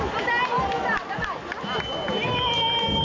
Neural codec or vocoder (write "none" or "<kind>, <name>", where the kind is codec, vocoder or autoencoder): none